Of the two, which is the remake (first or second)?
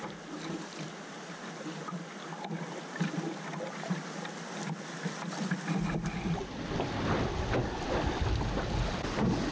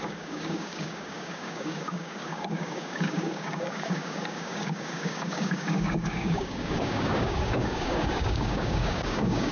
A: second